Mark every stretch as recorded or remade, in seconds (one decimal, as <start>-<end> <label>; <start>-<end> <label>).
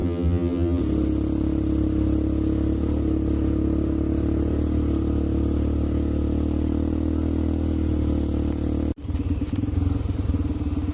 0.0-0.8 remade; 0.8-10.9 recorded